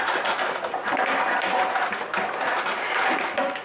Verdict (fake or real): real